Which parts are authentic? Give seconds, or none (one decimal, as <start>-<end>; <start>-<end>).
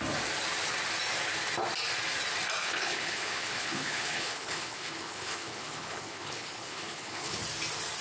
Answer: 0.0-2.6; 7.4-8.0